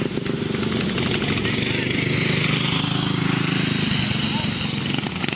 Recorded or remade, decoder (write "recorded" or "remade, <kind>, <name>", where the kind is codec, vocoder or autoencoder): recorded